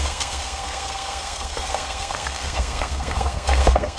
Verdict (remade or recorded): remade